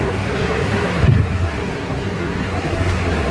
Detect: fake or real fake